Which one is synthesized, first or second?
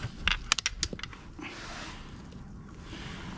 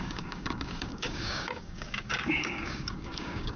second